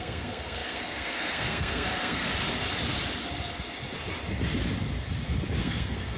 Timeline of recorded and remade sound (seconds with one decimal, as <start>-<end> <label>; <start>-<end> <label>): 0.0-2.3 remade; 2.3-5.6 recorded; 5.6-6.2 remade